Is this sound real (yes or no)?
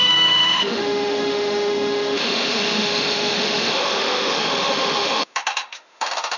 no